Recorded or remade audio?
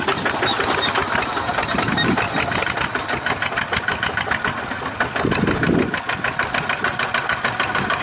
recorded